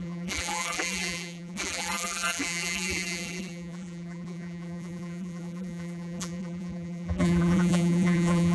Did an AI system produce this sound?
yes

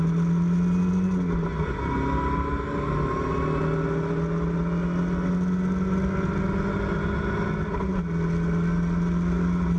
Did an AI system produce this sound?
no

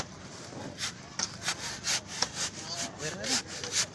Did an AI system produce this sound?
no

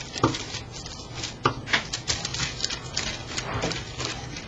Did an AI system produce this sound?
no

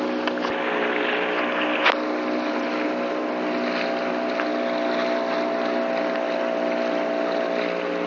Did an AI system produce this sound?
no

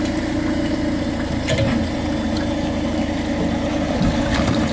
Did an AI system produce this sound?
no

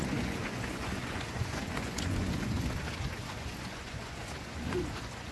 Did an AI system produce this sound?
yes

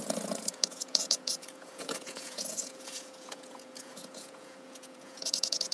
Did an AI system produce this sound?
yes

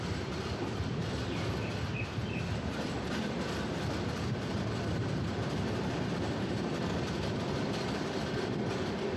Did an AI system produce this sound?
yes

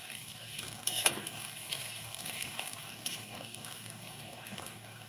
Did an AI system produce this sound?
yes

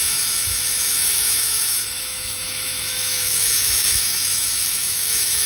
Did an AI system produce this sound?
yes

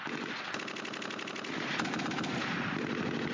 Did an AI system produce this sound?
no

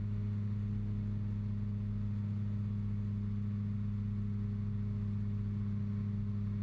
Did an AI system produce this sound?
no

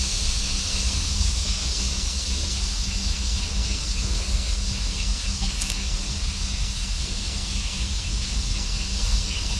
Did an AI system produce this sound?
yes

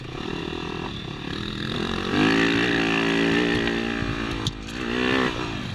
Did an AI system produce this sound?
no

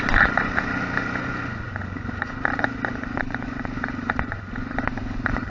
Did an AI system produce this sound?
yes